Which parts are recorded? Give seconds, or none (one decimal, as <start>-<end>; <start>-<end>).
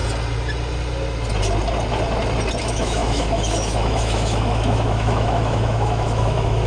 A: 0.0-2.6